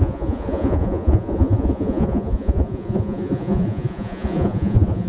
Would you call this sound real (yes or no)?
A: no